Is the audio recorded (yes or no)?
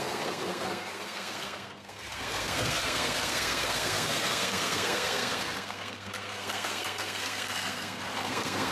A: no